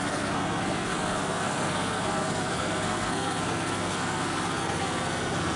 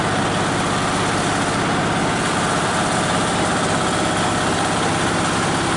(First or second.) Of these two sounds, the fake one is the first